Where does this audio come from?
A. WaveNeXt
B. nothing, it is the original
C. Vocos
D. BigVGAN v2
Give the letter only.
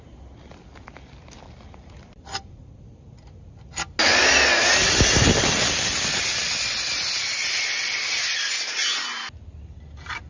B